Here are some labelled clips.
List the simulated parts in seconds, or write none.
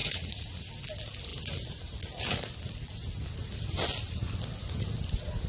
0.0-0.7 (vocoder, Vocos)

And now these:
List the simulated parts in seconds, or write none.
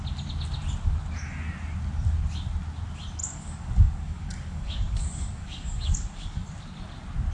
3.2-6.5 (codec, DAC)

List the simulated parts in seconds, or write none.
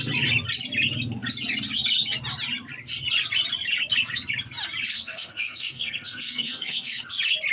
4.9-7.0 (codec, SNAC)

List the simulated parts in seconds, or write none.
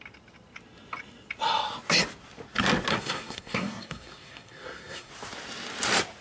2.9-5.1 (codec, SNAC)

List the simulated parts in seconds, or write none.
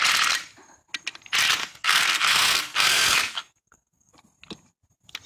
1.6-4.1 (codec, SNAC)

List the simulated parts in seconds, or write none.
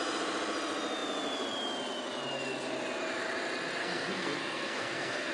3.8-5.3 (codec, SNAC)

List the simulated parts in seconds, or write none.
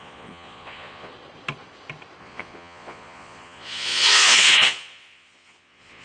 0.0-1.1 (vocoder, Vocos); 2.2-6.0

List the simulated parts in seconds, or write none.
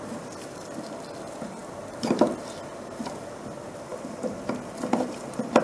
3.9-5.6 (vocoder, BigVGAN v2)